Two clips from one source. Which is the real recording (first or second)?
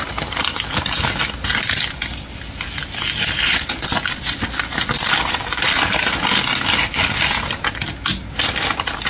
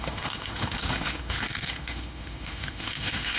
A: first